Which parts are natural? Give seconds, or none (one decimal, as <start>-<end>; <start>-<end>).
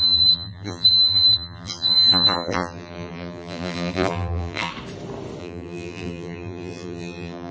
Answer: 4.7-5.4